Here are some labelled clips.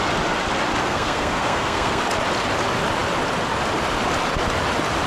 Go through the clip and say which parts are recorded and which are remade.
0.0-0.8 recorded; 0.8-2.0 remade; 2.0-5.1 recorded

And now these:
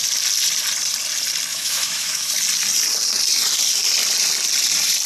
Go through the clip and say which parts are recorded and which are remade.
0.0-1.5 recorded; 1.5-2.3 remade; 2.3-5.1 recorded

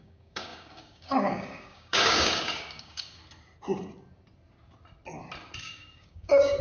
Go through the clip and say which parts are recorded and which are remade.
0.0-3.2 remade; 3.2-5.6 recorded; 5.6-6.6 remade

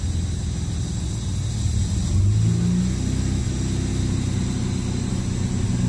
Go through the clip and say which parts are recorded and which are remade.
0.0-3.9 recorded; 3.9-5.1 remade; 5.1-5.9 recorded

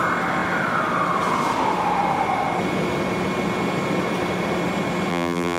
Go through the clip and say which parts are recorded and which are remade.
0.0-5.1 recorded; 5.1-5.6 remade

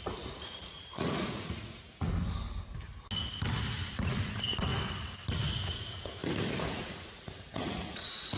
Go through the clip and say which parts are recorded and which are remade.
0.0-2.1 remade; 2.1-3.9 recorded; 3.9-4.7 remade; 4.7-5.7 recorded; 5.7-6.2 remade; 6.2-6.7 recorded; 6.7-8.4 remade

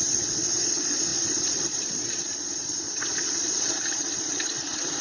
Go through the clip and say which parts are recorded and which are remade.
0.0-5.0 remade